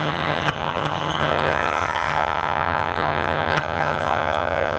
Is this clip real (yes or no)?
no